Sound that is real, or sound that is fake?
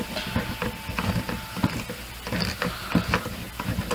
real